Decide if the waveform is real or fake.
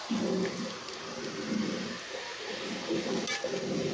real